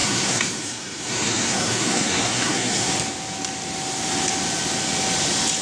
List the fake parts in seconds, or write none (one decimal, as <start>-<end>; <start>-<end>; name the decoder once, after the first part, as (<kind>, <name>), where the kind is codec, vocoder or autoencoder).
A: 0.0-2.9 (codec, SNAC)